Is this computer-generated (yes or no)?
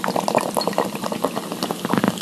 no